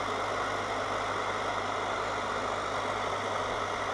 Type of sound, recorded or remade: recorded